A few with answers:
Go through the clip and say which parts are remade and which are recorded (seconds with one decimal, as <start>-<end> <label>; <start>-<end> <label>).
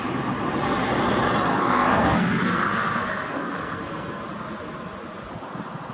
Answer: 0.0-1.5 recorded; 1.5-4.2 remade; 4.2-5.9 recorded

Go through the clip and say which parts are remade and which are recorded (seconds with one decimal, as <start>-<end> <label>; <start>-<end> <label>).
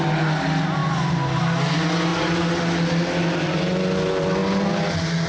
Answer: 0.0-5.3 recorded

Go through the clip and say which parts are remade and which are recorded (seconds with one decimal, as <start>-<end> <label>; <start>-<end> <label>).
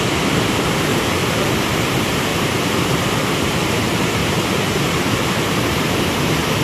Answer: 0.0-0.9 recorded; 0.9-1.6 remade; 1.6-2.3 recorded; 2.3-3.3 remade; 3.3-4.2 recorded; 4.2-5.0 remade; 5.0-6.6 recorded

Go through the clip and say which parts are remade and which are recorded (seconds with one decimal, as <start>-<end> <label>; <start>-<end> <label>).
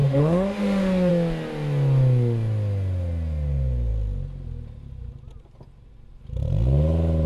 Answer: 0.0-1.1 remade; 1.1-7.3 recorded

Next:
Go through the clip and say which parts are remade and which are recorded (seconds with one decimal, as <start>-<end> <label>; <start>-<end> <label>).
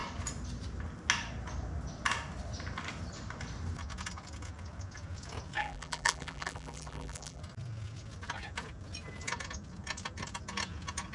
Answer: 0.0-5.6 recorded; 5.6-7.4 remade; 7.4-11.1 recorded